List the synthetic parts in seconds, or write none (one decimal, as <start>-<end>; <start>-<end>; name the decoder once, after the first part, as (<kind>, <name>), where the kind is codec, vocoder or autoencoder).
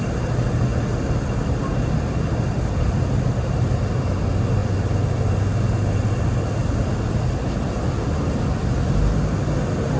none